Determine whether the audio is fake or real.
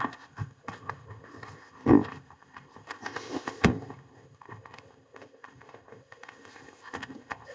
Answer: fake